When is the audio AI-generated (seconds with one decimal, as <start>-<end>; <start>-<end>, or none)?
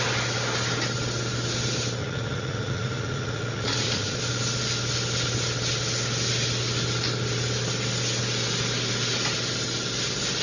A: 2.0-4.2